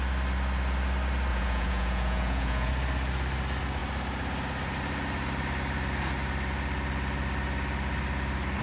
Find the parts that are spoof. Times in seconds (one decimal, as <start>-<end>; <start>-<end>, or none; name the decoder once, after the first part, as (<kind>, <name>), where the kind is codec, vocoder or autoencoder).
1.3-2.7 (vocoder, Vocos)

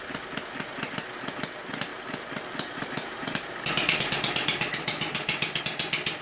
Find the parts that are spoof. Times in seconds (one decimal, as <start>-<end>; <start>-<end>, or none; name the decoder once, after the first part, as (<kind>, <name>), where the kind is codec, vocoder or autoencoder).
1.9-5.6 (vocoder, BigVGAN v2)

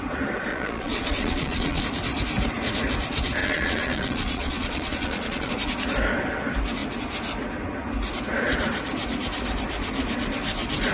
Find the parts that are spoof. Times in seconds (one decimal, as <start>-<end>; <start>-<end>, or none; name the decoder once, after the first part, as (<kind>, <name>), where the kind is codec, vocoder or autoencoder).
0.5-1.8 (vocoder, Vocos); 3.4-5.5

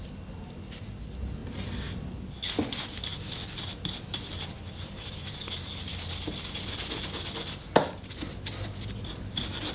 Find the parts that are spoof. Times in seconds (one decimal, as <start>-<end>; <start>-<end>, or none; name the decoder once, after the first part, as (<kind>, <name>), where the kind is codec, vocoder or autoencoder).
none

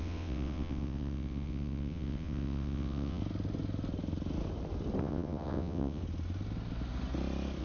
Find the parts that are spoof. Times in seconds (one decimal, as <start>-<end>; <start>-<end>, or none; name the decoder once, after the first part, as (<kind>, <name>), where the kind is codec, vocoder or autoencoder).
0.0-3.2 (vocoder, WaveNeXt); 5.0-6.0

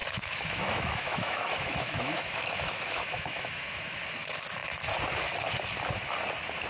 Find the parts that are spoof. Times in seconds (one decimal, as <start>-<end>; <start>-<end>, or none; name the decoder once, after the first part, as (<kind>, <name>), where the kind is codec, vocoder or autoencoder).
0.0-4.0 (autoencoder, DAC-VAE)